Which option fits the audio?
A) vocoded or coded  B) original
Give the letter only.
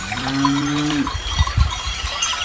A